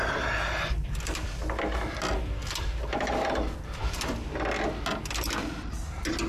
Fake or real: real